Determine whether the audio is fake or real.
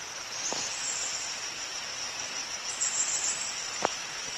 fake